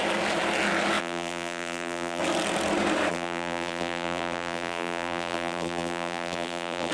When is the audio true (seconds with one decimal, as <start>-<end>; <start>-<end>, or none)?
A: 0.0-1.0; 2.2-3.1